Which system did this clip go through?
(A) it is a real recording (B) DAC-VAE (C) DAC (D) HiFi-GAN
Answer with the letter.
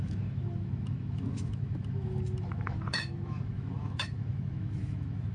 B